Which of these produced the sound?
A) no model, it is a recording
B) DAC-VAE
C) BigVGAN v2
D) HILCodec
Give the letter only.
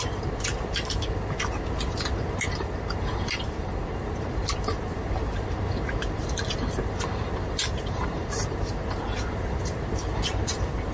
C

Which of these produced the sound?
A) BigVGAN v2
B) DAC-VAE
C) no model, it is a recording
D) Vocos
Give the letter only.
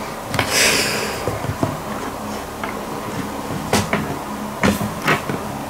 C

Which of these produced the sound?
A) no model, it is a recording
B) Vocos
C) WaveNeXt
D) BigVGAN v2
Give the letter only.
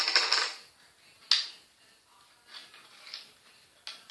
A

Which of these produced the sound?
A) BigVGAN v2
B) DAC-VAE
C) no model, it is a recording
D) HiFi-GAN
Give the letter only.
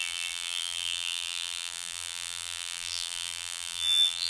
A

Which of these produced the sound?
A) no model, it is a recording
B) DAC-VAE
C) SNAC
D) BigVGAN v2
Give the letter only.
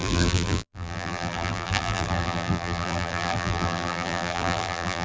D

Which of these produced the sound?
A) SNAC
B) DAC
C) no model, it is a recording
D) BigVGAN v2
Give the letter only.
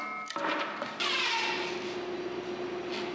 C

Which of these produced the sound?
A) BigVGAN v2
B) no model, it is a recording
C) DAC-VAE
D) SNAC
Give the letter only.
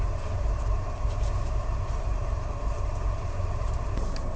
A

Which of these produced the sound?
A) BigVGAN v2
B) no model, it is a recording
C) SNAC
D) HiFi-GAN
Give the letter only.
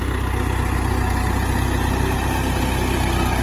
B